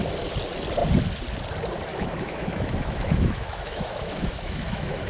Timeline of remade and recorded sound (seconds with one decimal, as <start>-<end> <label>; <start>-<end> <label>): 0.0-1.9 recorded; 1.9-5.1 remade